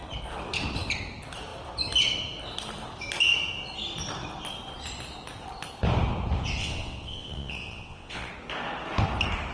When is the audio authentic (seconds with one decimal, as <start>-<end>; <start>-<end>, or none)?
0.0-6.6; 8.3-9.5